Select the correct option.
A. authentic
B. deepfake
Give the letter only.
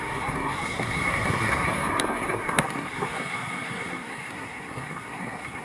B